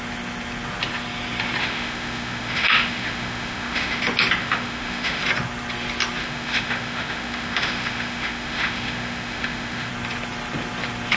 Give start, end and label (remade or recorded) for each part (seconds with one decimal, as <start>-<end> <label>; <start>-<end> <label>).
0.0-1.6 recorded; 1.6-4.0 remade; 4.0-4.4 recorded; 4.4-5.2 remade; 5.2-6.2 recorded; 6.2-9.9 remade; 9.9-11.2 recorded